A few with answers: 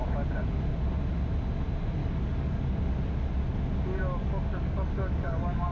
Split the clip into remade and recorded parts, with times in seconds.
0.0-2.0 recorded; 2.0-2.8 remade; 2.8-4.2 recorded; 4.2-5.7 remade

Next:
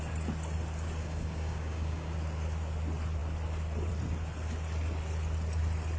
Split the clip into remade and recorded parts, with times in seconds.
0.0-1.0 recorded; 1.0-2.1 remade; 2.1-6.0 recorded

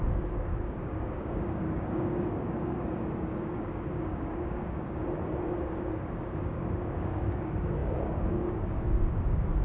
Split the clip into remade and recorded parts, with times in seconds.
0.0-5.0 remade; 5.0-5.6 recorded; 5.6-9.6 remade

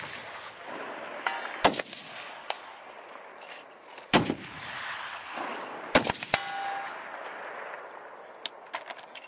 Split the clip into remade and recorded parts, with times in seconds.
0.0-2.0 recorded; 2.0-2.8 remade; 2.8-9.3 recorded

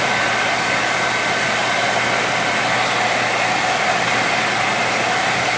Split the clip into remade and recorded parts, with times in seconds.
0.0-5.6 recorded

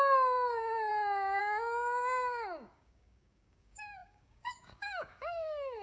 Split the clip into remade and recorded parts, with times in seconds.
0.0-0.9 remade; 0.9-1.4 recorded; 1.4-5.8 remade